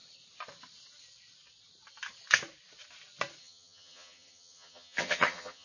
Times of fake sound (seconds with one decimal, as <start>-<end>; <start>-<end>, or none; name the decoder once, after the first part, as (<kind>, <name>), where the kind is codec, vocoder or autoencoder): 3.4-5.6 (vocoder, HiFi-GAN)

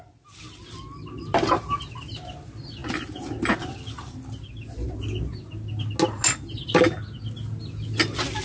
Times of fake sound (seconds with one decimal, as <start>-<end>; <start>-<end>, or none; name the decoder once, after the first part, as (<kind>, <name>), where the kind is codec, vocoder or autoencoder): none

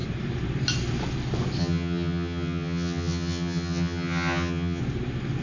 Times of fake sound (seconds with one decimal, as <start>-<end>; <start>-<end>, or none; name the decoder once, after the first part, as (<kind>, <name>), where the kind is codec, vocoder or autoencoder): 1.6-4.8 (vocoder, HiFi-GAN)

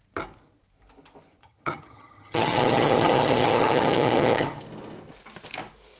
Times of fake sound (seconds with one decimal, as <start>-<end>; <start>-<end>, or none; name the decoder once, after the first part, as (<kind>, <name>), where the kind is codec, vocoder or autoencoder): 1.4-4.6 (vocoder, HiFi-GAN)

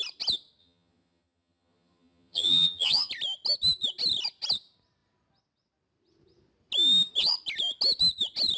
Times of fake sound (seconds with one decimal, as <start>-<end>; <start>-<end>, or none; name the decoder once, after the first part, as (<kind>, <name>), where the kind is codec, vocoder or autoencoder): 0.6-3.1 (vocoder, HiFi-GAN)

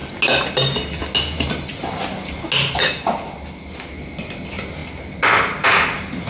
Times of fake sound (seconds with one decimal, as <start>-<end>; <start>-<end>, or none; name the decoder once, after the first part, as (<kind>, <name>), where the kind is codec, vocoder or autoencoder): none

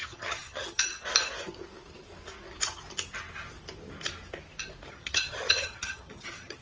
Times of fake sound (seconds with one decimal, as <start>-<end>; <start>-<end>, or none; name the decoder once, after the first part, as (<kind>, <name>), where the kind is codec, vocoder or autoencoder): 0.0-0.9 (vocoder, HiFi-GAN); 4.9-6.6

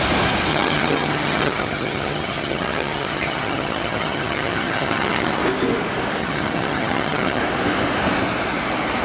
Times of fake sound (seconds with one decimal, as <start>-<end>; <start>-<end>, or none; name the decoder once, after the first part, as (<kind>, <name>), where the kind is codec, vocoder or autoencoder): 0.5-5.4 (vocoder, HiFi-GAN); 6.2-7.4